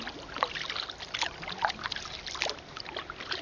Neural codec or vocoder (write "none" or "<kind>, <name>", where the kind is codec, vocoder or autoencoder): none